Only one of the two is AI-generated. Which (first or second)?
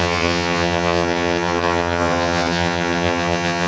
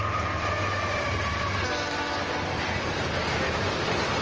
first